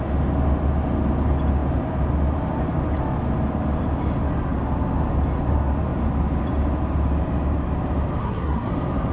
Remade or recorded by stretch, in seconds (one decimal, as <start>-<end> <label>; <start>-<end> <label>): 0.0-8.2 recorded; 8.2-8.7 remade; 8.7-9.1 recorded